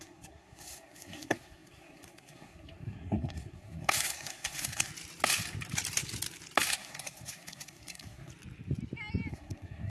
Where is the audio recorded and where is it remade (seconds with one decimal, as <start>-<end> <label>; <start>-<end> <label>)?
0.0-4.9 remade; 4.9-6.7 recorded; 6.7-8.3 remade; 8.3-9.3 recorded; 9.3-9.9 remade